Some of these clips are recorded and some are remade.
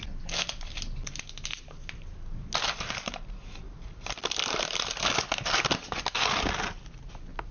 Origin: recorded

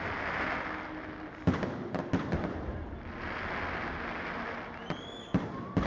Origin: recorded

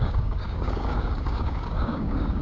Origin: remade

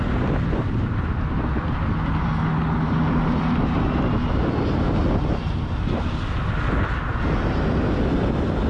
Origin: recorded